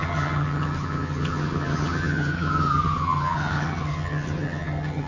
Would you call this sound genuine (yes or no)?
no